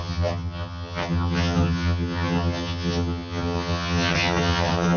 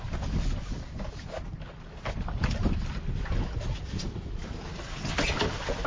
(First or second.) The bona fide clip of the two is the second